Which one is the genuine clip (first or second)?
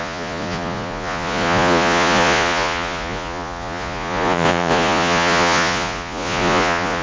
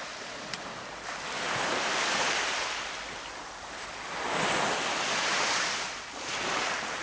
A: second